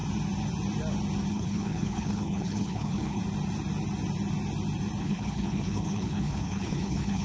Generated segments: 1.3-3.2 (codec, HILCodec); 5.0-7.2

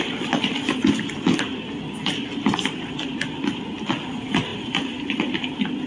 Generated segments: 4.5-5.3 (vocoder, BigVGAN v2)

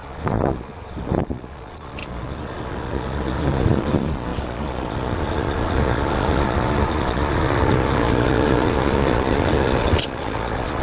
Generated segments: 0.0-10.8 (vocoder, Vocos)

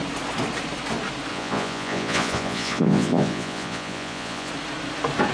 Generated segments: 1.3-4.5 (vocoder, Vocos)

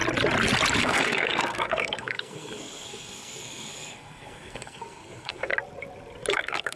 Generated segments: 0.8-5.5 (codec, SNAC); 6.3-6.8

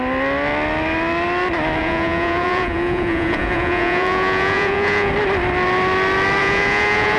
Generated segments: 1.8-5.1 (vocoder, Vocos); 6.4-7.2